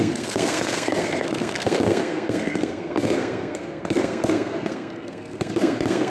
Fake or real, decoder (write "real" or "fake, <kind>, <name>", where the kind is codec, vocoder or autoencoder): fake, codec, SNAC